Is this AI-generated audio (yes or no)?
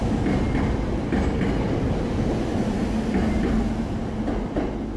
no